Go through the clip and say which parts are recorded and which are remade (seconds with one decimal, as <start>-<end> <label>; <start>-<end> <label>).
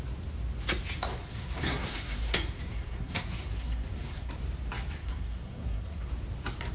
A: 0.0-1.2 recorded; 1.2-4.3 remade; 4.3-5.0 recorded; 5.0-6.1 remade; 6.1-6.7 recorded